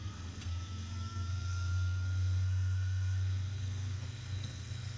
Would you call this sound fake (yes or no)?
yes